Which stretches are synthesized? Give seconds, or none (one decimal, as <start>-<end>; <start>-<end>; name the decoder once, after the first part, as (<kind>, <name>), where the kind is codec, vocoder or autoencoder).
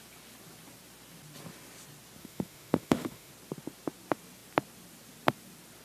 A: 2.2-3.3 (autoencoder, DAC-VAE)